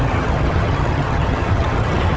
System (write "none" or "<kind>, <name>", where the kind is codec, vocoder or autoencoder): vocoder, HiFi-GAN